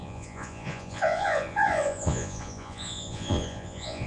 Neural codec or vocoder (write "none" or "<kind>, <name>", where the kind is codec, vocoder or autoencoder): vocoder, Vocos